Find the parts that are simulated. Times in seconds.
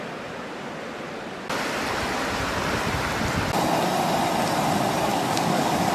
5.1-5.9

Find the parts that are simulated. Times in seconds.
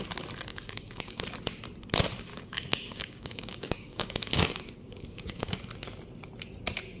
0.5-1.2; 2.3-5.6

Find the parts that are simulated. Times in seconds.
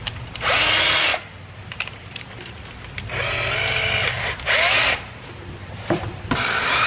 0.0-0.6; 1.1-2.9; 5.6-6.3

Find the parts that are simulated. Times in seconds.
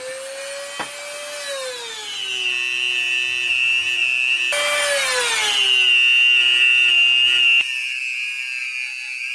none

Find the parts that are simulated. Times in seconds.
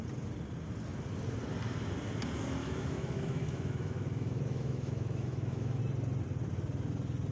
2.6-5.8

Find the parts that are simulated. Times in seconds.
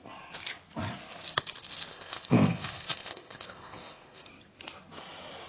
1.9-4.3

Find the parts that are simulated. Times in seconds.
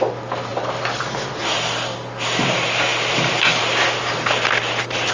0.0-2.9; 3.6-5.1